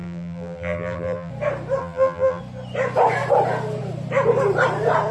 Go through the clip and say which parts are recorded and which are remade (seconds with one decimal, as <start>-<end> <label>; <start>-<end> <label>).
0.0-1.3 remade; 1.3-1.8 recorded; 1.8-2.4 remade; 2.4-5.1 recorded